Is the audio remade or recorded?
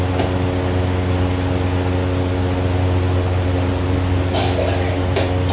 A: recorded